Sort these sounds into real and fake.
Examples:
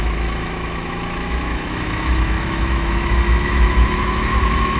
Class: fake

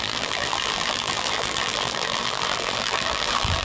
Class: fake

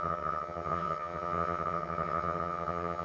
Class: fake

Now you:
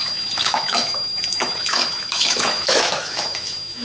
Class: fake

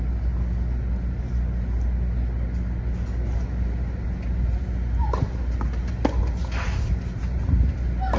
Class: real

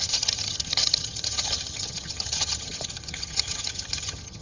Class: fake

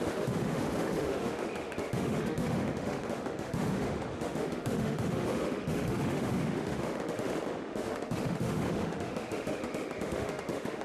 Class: fake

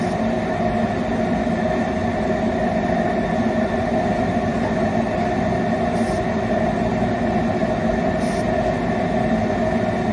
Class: real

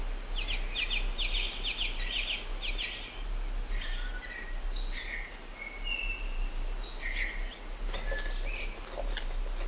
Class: real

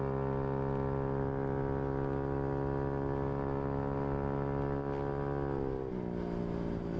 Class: real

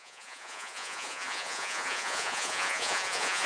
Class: fake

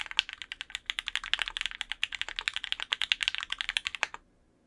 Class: real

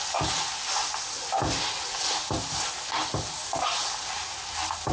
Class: real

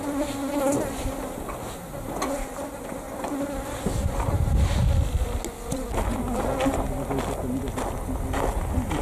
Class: real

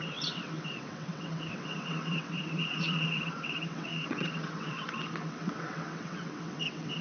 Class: fake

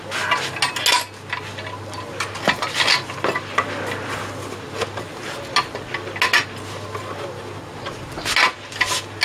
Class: real